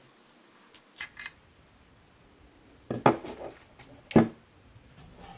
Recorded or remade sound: recorded